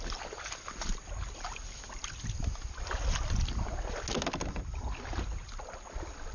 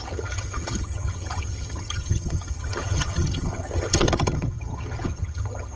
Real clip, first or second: first